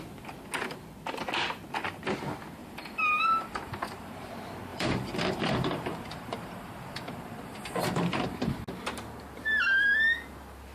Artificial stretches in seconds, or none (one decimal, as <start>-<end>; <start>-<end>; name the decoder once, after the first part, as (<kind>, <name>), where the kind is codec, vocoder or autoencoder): 2.6-4.3 (vocoder, BigVGAN v2); 4.7-8.6